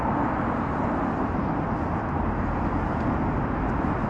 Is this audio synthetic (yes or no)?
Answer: no